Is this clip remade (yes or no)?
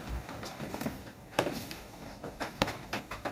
yes